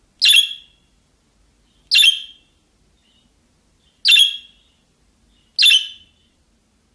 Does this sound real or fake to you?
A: real